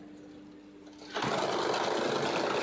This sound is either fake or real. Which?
real